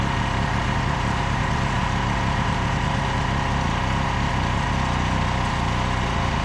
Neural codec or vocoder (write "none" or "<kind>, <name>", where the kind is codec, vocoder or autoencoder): none